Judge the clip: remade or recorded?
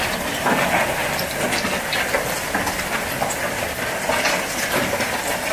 recorded